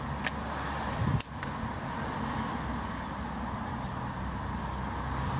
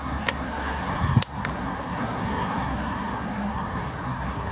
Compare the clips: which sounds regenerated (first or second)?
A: second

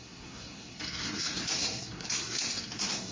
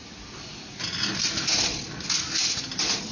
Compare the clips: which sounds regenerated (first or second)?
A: first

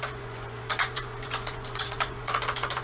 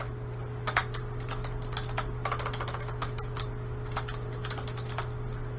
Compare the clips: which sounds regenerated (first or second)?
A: first